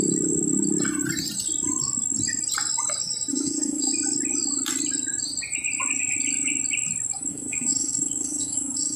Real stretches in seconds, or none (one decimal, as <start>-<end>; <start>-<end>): 0.0-3.3; 3.9-7.3

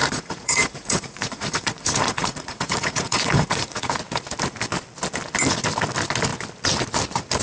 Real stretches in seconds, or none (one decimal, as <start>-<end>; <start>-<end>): 3.9-7.4

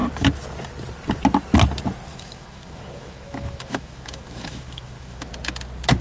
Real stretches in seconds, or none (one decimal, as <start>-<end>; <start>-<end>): 0.0-2.1; 5.3-6.0